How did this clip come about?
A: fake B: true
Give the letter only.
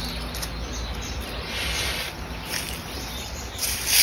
B